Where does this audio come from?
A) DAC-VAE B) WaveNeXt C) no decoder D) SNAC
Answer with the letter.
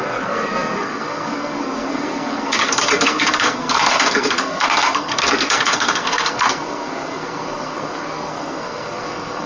D